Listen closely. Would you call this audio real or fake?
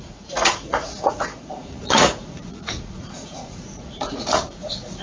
fake